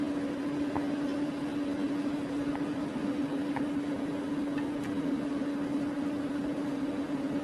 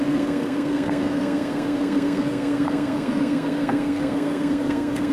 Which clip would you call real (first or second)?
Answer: first